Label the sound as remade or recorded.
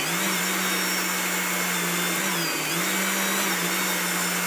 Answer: recorded